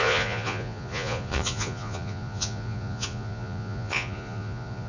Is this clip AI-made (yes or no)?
yes